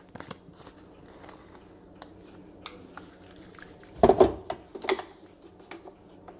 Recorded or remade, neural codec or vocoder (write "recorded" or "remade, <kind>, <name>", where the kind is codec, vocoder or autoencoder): recorded